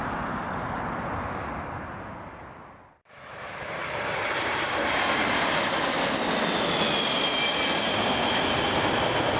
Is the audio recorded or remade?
recorded